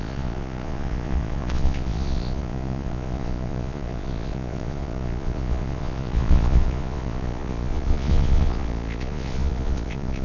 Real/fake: fake